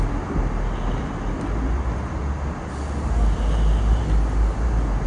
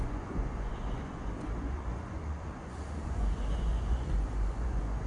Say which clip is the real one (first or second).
first